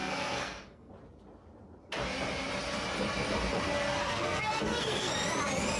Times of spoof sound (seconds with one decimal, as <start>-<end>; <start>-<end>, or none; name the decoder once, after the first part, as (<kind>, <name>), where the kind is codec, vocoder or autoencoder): 0.0-0.9 (codec, SNAC); 4.0-5.1